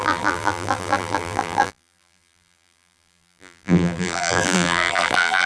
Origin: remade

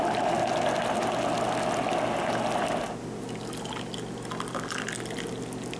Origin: recorded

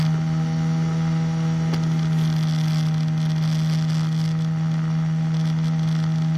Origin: recorded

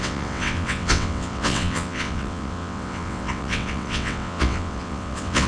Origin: remade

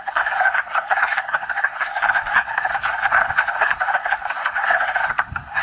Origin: remade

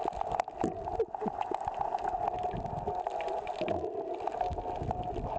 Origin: recorded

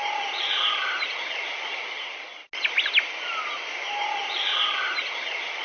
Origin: recorded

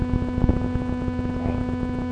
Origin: recorded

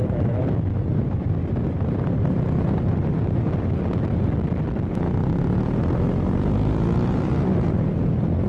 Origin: recorded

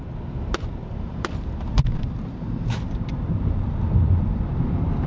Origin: remade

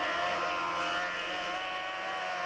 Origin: recorded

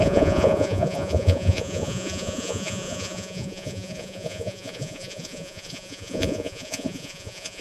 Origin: remade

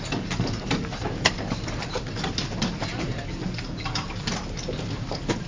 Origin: recorded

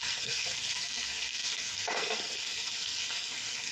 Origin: remade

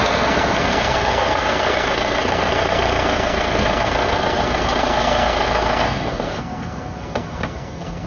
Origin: remade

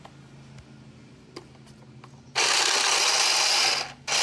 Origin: recorded